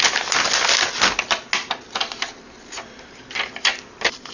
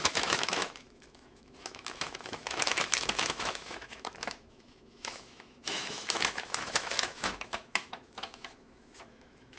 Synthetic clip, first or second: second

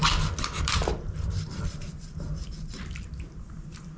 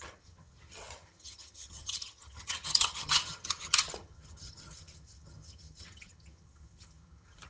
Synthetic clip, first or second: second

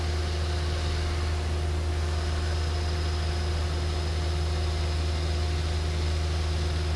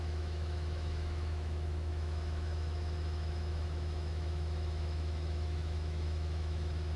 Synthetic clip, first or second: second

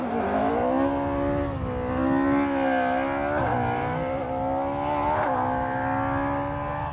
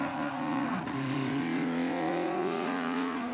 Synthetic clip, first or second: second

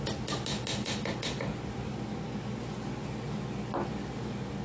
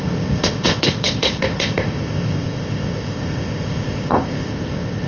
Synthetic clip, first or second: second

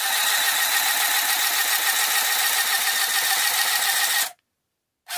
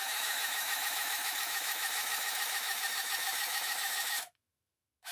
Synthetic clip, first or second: second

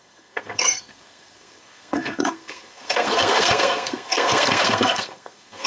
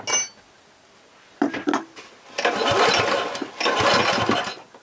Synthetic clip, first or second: first